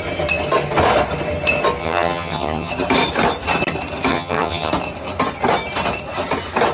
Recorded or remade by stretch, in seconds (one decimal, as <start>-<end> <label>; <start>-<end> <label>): 0.0-1.8 recorded; 1.8-2.7 remade; 2.7-4.1 recorded; 4.1-4.7 remade; 4.7-6.7 recorded